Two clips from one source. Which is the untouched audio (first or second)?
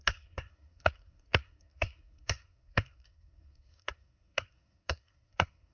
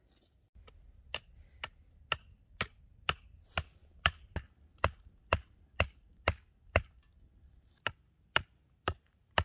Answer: second